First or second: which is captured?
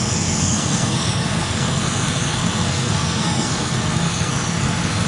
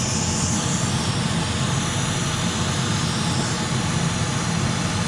second